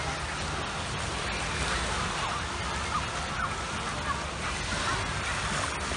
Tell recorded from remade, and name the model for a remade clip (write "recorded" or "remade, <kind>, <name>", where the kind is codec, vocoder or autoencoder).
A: recorded